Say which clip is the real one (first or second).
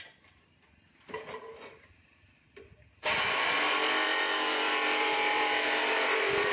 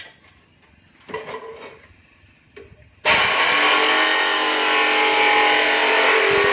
second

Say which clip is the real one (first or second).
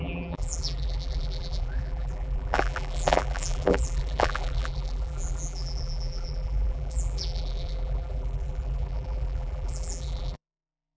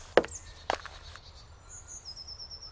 second